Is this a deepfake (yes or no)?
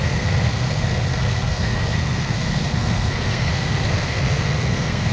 yes